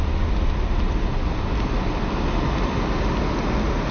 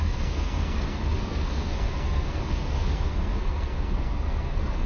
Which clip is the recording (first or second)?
first